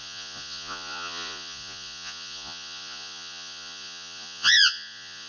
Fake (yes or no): yes